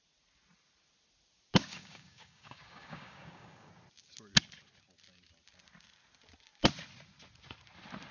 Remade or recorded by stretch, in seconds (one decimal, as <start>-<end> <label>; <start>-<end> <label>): 0.0-1.7 recorded; 1.7-3.7 remade; 3.7-8.1 recorded